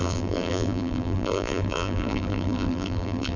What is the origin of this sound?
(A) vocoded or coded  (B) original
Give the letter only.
A